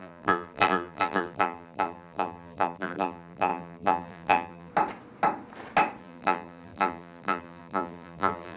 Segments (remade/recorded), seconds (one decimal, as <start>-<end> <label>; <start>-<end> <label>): 0.0-4.7 remade; 4.7-6.0 recorded; 6.0-8.6 remade